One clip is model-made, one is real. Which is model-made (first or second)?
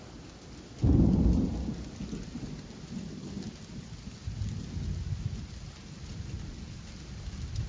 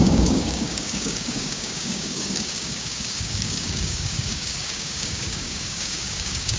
second